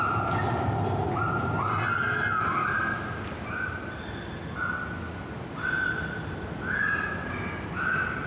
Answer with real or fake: real